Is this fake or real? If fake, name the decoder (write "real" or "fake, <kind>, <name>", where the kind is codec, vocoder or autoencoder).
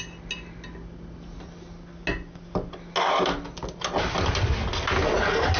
real